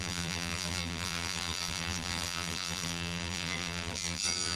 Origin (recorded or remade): remade